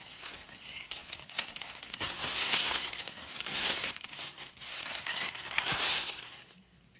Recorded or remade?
remade